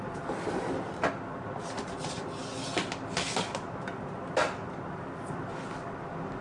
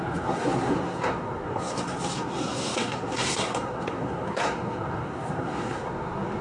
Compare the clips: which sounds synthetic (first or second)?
second